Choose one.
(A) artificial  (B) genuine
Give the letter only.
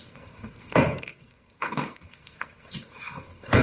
A